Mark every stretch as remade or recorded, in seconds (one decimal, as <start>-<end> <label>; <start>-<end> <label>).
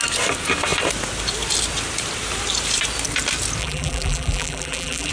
0.0-3.6 recorded; 3.6-5.1 remade